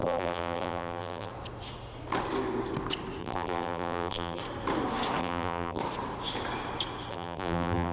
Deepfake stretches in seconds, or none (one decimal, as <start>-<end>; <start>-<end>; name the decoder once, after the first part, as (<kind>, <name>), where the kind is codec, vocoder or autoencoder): 0.0-1.3 (vocoder, BigVGAN v2); 3.2-4.4; 5.2-5.8; 7.1-7.9